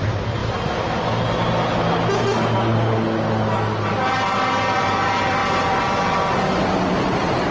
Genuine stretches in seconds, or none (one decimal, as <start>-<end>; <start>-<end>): 0.0-7.5